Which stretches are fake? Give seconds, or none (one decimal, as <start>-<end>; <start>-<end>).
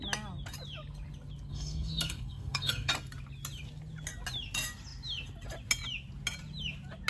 1.5-2.9